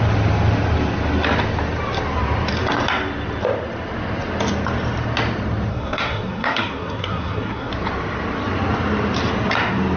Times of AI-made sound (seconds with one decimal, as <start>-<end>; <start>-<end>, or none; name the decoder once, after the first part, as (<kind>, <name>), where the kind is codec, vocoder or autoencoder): 5.7-7.7 (codec, SNAC)